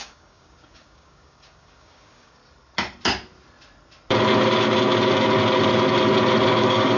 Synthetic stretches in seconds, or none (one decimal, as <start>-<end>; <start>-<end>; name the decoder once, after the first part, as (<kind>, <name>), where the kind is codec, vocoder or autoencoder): 0.0-2.4 (codec, DAC); 6.6-7.0